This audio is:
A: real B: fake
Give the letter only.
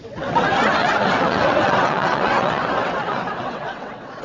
B